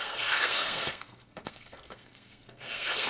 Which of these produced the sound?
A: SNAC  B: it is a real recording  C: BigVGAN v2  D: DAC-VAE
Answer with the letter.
A